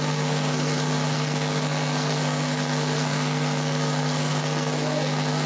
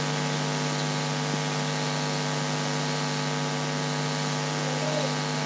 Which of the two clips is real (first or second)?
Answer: second